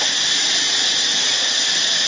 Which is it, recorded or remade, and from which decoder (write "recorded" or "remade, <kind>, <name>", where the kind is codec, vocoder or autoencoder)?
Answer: recorded